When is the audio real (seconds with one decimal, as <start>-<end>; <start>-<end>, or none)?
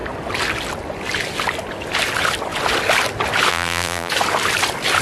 0.0-3.5; 4.1-5.0